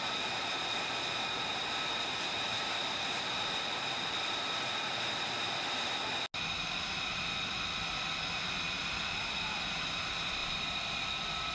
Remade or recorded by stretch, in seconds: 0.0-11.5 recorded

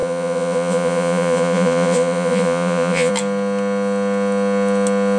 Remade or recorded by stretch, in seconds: 0.0-3.1 remade; 3.1-5.2 recorded